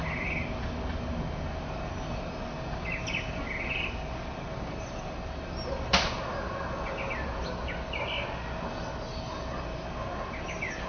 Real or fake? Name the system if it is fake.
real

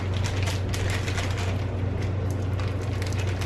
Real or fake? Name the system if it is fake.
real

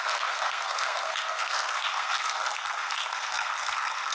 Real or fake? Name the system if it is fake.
fake, codec, SNAC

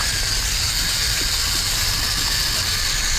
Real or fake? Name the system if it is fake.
real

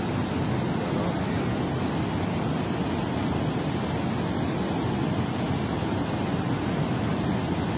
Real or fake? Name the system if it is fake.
real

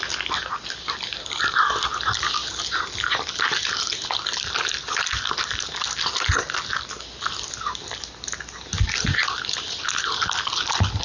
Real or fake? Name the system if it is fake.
real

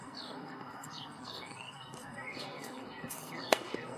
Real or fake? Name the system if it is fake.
fake, codec, SNAC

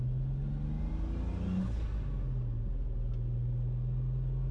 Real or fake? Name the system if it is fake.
real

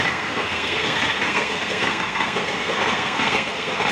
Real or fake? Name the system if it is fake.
fake, codec, SNAC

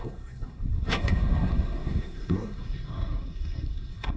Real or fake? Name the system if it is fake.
fake, codec, SNAC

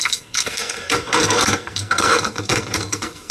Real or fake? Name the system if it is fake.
fake, codec, SNAC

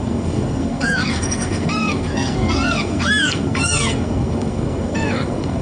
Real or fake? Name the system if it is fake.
fake, codec, SNAC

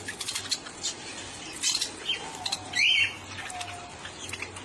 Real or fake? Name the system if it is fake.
real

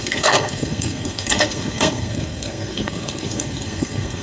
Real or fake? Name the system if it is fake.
fake, codec, SNAC